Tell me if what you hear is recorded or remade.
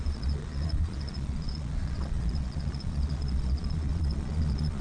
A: remade